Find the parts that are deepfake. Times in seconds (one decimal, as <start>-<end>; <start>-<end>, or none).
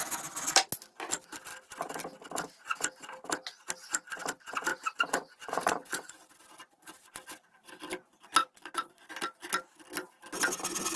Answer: 4.7-6.2; 8.4-9.1